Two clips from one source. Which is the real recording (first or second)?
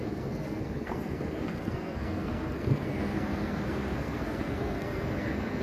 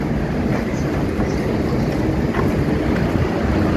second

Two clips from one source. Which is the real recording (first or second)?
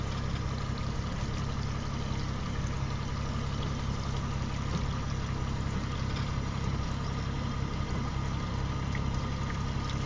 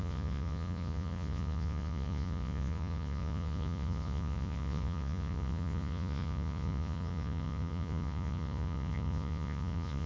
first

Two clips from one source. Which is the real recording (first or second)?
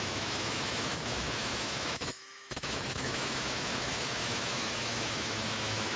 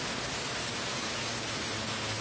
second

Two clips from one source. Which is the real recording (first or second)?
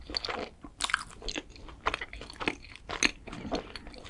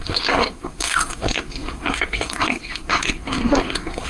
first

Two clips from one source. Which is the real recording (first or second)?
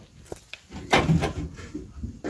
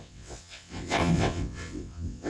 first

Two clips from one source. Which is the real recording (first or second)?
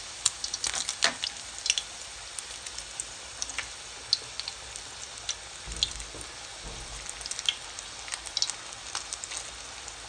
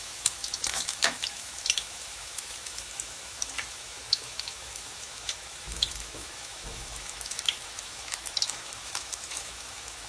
first